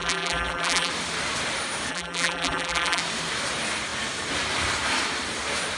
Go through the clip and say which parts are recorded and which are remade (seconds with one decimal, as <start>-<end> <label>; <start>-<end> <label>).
0.0-0.9 remade; 0.9-1.9 recorded; 1.9-3.0 remade; 3.0-5.8 recorded